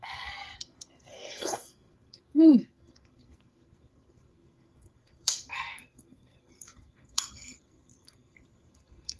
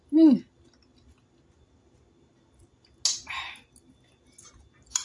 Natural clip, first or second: second